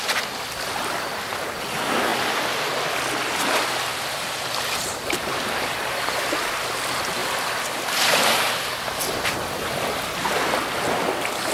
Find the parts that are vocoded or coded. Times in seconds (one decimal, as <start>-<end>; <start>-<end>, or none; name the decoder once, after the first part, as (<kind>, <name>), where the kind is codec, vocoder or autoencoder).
3.9-5.5 (vocoder, BigVGAN v2); 7.2-8.7